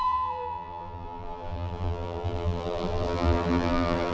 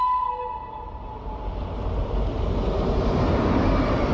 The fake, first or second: first